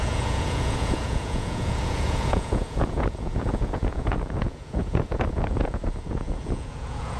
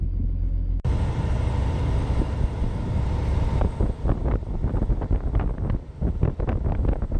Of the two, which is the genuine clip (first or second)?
second